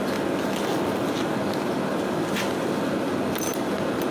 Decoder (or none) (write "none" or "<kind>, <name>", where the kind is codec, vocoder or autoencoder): none